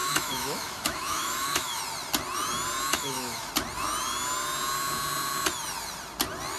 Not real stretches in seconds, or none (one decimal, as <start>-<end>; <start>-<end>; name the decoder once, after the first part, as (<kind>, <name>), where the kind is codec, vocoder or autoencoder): 0.0-1.8 (autoencoder, DAC-VAE); 2.9-3.5

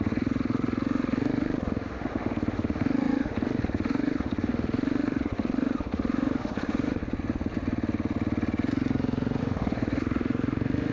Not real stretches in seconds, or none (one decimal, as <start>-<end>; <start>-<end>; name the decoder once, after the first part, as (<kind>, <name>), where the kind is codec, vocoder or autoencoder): 0.0-7.0 (autoencoder, DAC-VAE); 9.4-10.9

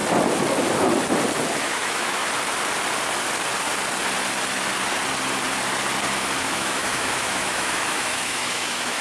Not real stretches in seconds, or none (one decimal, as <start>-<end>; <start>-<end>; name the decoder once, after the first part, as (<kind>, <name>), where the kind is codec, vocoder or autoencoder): 1.6-2.2 (autoencoder, DAC-VAE); 6.4-9.0

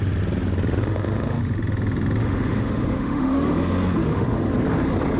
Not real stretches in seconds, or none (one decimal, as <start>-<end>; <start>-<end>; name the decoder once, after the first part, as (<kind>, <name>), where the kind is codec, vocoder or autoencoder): 0.8-1.4 (autoencoder, DAC-VAE); 2.2-3.5; 4.0-4.5